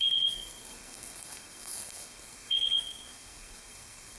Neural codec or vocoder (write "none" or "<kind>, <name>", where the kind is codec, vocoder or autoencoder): codec, SNAC